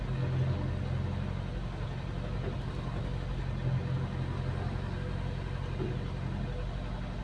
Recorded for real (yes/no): yes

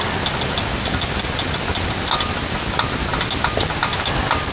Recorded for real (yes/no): yes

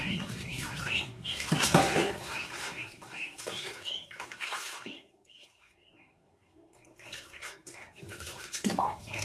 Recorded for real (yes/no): no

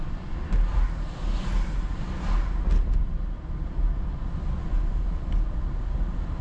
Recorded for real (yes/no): yes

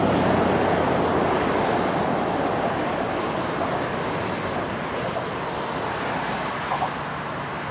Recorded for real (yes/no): yes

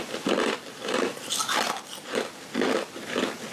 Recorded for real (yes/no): yes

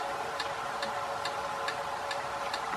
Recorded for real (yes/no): yes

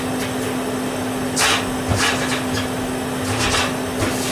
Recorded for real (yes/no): yes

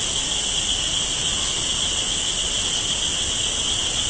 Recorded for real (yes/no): yes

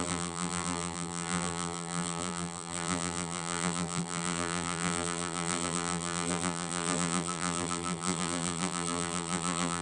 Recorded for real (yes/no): no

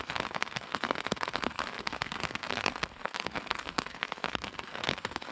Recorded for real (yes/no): no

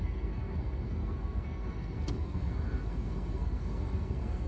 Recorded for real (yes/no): no